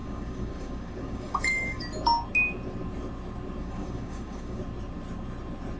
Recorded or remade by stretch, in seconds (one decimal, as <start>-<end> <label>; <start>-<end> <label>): 0.0-1.8 remade; 1.8-3.6 recorded; 3.6-4.6 remade; 4.6-5.8 recorded